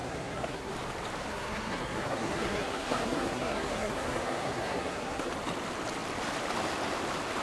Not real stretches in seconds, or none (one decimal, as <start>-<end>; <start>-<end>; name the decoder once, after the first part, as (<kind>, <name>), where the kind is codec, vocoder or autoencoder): 0.0-0.7 (codec, SNAC); 1.3-5.3